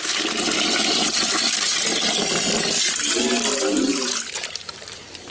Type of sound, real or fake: real